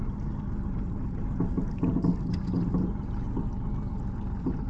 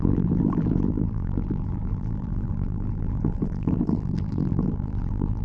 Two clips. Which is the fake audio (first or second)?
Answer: second